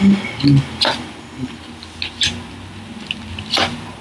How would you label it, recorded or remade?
recorded